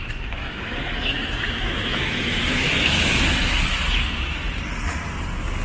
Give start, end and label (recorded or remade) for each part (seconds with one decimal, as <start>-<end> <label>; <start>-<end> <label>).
0.0-3.4 remade; 3.4-5.6 recorded